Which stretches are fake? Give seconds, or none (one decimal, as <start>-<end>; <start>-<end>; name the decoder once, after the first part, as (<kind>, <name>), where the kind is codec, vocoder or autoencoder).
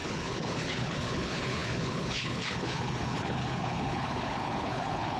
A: 0.0-5.2 (codec, HILCodec)